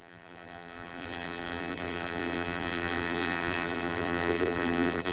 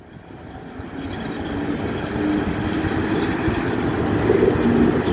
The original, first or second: second